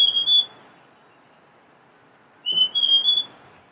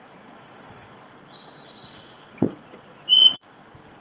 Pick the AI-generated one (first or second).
second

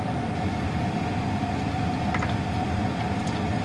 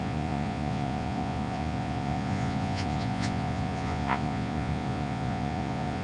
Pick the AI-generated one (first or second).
second